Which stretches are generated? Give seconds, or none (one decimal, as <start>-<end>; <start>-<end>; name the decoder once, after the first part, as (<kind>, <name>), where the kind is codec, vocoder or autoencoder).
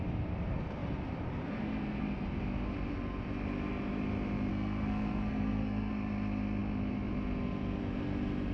4.5-5.9 (codec, SNAC)